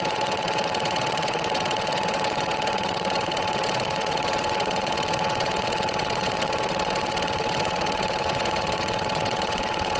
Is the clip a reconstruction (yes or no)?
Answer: yes